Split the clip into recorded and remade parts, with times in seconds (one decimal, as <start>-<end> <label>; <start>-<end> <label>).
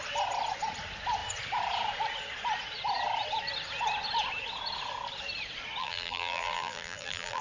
0.0-5.8 recorded; 5.8-7.4 remade